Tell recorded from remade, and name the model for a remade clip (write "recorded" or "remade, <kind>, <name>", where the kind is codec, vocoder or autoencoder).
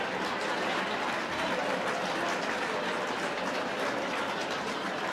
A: recorded